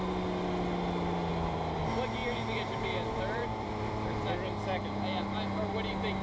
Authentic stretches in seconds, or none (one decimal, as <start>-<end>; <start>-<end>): 0.0-1.3; 1.8-2.2; 4.8-6.2